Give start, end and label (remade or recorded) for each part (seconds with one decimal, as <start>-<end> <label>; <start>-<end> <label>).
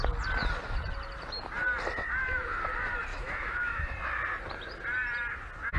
0.0-3.1 recorded; 3.1-3.9 remade; 3.9-5.8 recorded